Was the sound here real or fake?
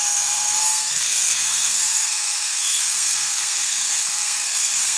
fake